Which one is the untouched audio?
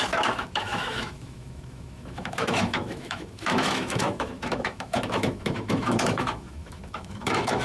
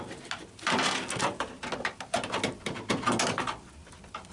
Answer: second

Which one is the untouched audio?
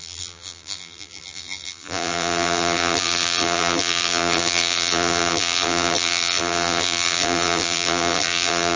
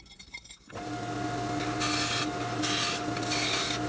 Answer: second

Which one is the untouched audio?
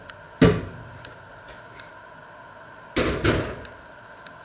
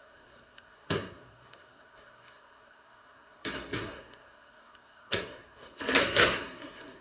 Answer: first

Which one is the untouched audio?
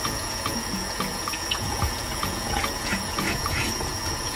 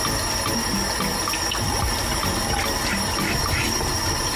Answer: second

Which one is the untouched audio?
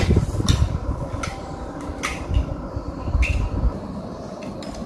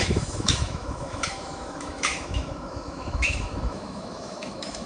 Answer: first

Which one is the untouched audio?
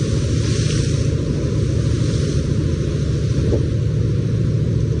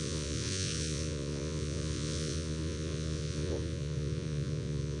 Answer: first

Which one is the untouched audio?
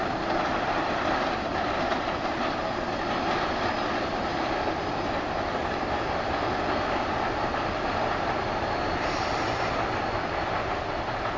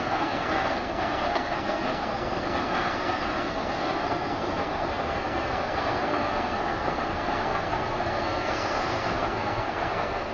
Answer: first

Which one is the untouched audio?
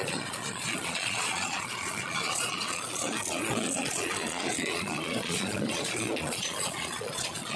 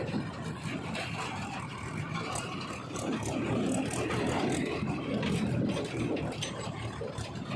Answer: second